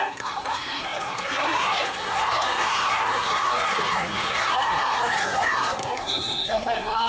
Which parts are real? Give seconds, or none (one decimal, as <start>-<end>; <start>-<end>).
none